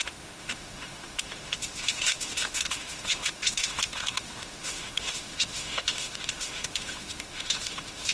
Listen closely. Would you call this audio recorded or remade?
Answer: remade